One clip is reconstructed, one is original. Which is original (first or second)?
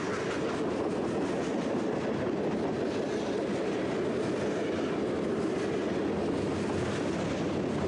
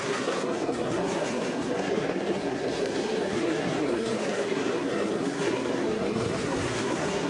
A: first